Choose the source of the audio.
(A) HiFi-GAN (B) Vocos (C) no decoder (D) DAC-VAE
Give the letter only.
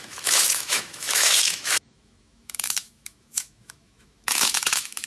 D